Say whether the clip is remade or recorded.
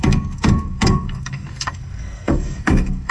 remade